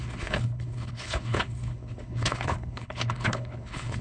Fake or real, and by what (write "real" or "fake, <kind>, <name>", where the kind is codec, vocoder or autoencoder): fake, codec, HILCodec